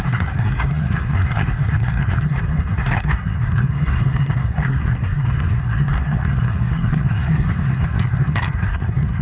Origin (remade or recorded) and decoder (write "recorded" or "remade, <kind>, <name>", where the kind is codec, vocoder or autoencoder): remade, codec, SNAC